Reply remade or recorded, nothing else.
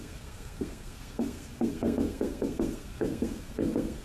remade